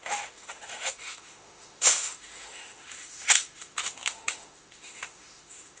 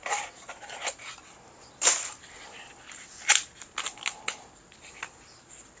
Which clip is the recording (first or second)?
second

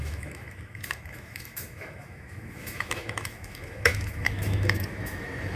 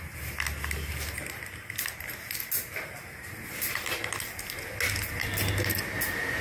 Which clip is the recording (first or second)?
second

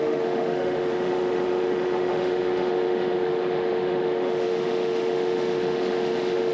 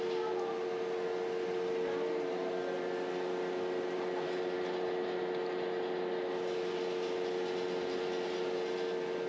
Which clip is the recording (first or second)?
second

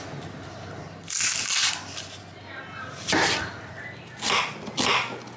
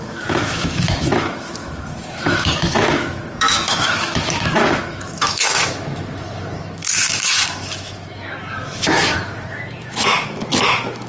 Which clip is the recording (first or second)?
first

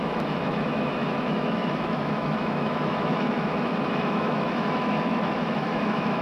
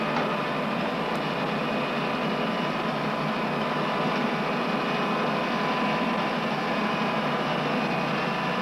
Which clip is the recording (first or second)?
second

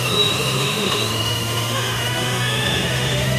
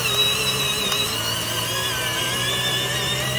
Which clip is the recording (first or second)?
second